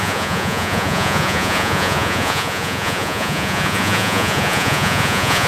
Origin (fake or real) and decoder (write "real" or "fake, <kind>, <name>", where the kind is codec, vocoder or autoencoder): fake, vocoder, Vocos